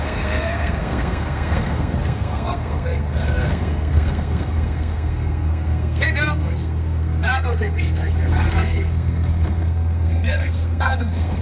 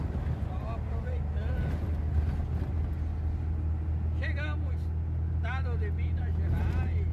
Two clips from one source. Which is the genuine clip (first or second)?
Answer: second